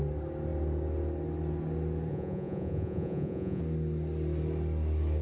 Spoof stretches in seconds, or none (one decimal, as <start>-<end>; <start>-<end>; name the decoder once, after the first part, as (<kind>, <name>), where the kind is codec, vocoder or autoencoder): 2.1-3.6 (vocoder, Vocos)